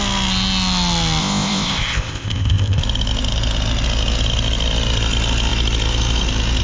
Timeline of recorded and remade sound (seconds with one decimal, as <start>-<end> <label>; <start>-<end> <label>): 0.0-1.2 recorded; 1.2-2.8 remade; 2.8-6.6 recorded

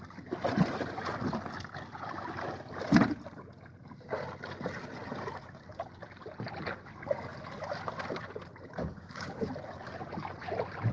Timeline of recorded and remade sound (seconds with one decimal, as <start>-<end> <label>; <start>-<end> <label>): 0.0-8.8 recorded; 8.8-9.5 remade; 9.5-10.9 recorded

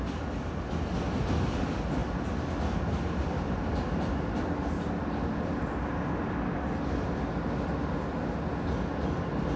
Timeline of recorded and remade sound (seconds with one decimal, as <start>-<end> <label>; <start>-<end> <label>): 0.0-9.6 recorded

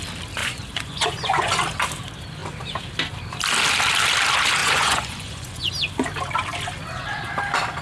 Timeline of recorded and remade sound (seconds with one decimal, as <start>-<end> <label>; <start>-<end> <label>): 0.0-0.4 recorded; 0.4-1.5 remade; 1.5-4.6 recorded; 4.6-5.7 remade; 5.7-7.8 recorded